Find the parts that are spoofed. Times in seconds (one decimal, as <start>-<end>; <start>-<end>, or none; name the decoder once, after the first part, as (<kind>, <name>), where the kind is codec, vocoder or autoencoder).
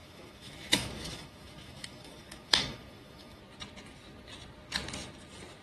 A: 0.0-3.4 (autoencoder, DAC-VAE)